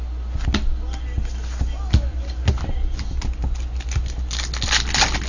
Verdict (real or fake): real